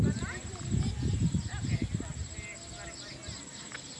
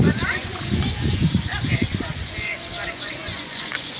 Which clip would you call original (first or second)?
first